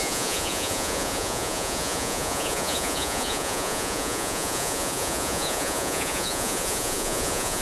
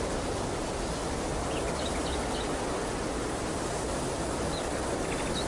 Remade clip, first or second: first